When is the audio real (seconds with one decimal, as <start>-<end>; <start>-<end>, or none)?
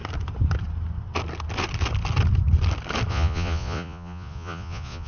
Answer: 0.0-3.1